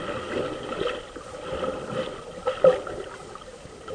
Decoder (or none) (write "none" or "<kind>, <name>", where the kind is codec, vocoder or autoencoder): none